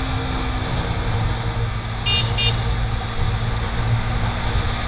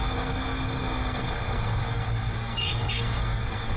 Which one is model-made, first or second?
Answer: second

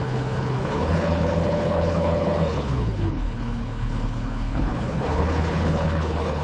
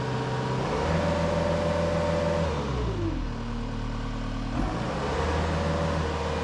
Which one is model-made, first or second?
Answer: first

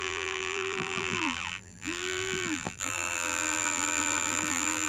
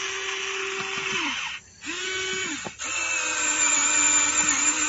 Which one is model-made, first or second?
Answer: first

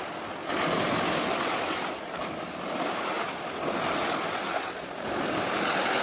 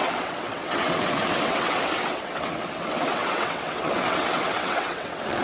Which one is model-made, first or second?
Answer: second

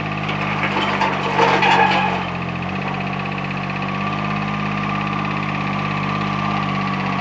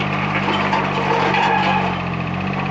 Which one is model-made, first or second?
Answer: second